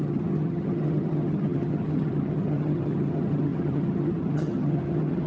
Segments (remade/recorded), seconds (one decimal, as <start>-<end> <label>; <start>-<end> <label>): 0.0-5.3 remade

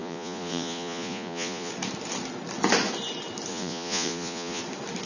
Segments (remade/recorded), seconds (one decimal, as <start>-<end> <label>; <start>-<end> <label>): 0.0-1.7 remade; 1.7-3.5 recorded; 3.5-4.6 remade; 4.6-5.1 recorded